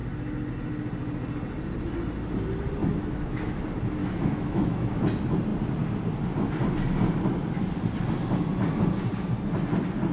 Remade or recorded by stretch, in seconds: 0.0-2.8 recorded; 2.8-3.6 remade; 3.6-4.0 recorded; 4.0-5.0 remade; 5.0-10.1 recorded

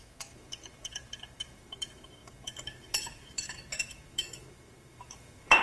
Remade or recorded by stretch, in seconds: 0.0-5.6 remade

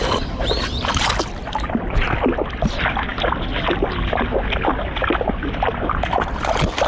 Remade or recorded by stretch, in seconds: 0.0-6.9 recorded

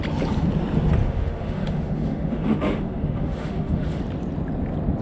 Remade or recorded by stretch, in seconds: 0.0-1.0 recorded; 1.0-4.0 remade; 4.0-5.0 recorded

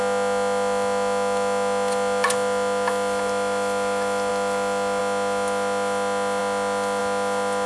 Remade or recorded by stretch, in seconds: 0.0-7.7 recorded

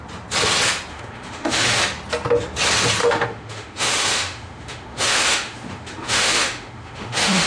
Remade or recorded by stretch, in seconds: 0.0-0.9 recorded; 0.9-1.8 remade; 1.8-3.0 recorded; 3.0-7.5 remade

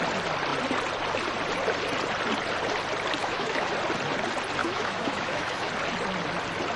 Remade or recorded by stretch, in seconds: 0.0-3.2 recorded; 3.2-3.7 remade; 3.7-4.6 recorded; 4.6-5.7 remade; 5.7-6.8 recorded